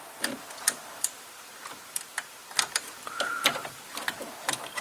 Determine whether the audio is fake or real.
fake